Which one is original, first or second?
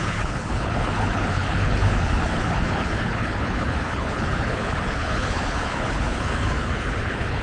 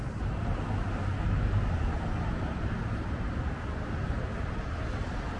second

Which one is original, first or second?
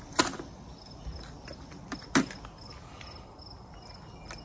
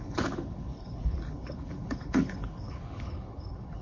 first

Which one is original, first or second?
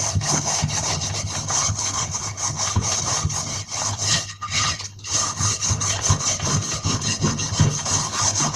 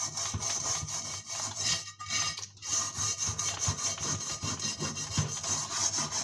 second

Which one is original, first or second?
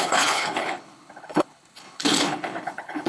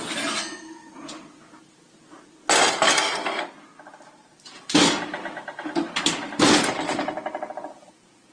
second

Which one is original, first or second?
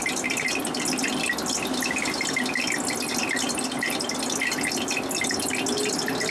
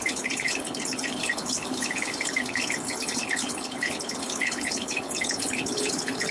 first